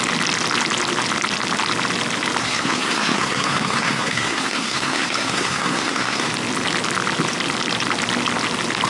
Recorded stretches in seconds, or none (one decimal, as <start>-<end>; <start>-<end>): 0.0-2.4; 6.3-8.9